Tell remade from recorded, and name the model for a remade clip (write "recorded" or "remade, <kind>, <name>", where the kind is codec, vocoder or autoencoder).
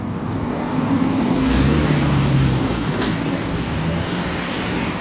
remade, codec, DAC